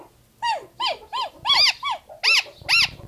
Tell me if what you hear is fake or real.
real